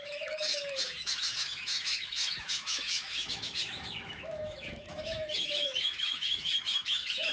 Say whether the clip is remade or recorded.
remade